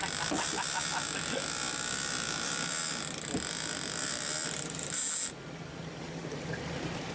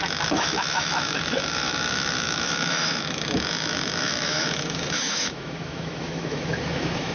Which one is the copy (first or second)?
second